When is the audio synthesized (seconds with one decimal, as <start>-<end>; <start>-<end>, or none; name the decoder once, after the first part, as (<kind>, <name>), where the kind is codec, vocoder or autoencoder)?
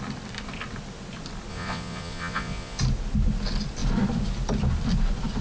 1.5-2.8 (vocoder, Vocos)